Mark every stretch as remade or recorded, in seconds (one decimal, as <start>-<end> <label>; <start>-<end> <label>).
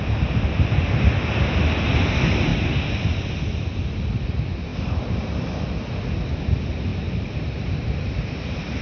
0.0-6.9 recorded; 6.9-8.8 remade